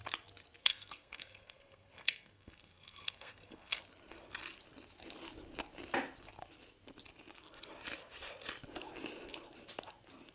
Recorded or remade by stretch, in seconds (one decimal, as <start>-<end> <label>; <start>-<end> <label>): 0.0-0.6 recorded; 0.6-3.8 remade; 3.8-10.3 recorded